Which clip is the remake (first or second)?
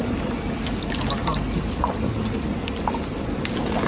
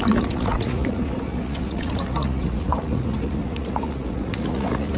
second